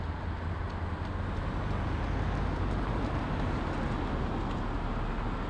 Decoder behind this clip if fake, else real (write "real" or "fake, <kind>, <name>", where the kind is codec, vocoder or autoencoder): real